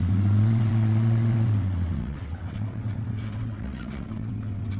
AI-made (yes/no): yes